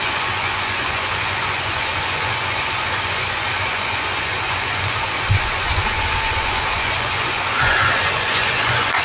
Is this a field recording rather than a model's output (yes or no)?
no